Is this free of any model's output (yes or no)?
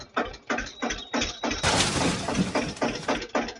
yes